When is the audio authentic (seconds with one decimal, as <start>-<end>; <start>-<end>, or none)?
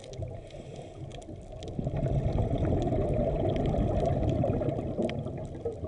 0.0-5.9